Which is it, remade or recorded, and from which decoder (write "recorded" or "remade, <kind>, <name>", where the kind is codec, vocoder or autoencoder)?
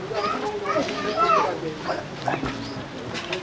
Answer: recorded